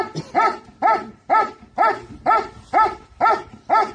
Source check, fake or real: real